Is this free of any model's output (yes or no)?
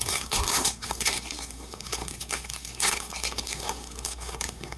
no